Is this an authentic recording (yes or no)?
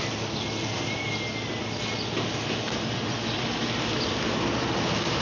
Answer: yes